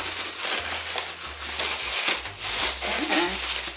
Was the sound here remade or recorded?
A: recorded